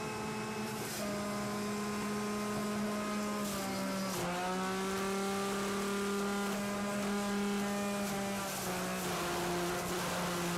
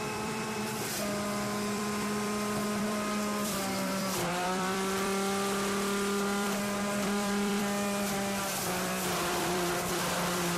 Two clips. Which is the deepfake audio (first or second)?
second